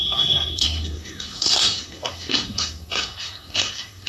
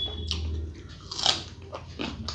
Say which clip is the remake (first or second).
first